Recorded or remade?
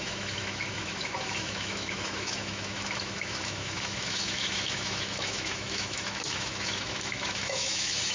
remade